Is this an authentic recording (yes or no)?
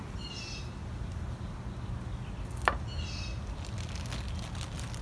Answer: yes